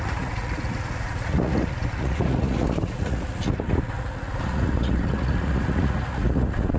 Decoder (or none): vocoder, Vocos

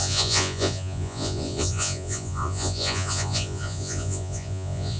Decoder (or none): vocoder, Vocos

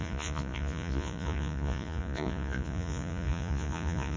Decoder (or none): vocoder, Vocos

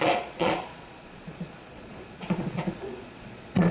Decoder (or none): vocoder, Vocos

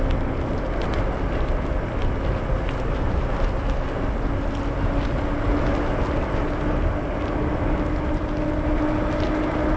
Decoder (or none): none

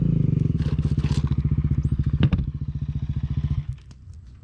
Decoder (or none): none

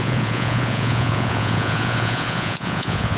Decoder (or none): vocoder, Vocos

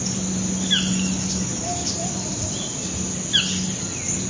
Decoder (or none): none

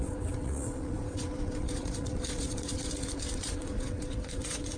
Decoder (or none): vocoder, Vocos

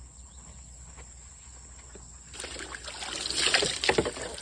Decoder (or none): none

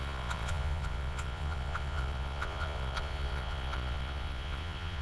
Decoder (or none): vocoder, Vocos